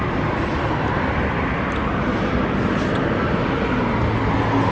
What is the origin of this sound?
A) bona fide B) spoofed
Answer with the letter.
A